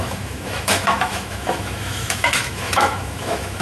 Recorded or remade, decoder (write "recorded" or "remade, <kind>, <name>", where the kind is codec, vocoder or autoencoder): remade, autoencoder, DAC-VAE